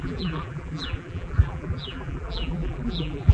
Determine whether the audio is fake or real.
fake